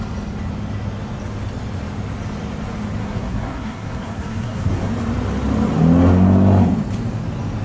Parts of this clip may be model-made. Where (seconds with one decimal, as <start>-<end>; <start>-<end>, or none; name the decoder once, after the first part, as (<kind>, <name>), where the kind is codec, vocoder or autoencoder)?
3.0-4.9 (codec, SNAC)